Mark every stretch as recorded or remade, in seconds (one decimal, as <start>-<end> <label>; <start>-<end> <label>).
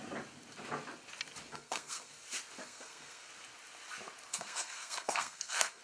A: 0.0-1.5 recorded; 1.5-2.1 remade; 2.1-2.6 recorded; 2.6-3.3 remade; 3.3-4.3 recorded; 4.3-5.8 remade